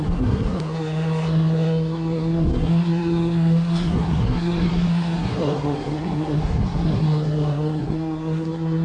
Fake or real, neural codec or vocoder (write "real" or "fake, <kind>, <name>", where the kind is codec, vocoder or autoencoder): fake, codec, SNAC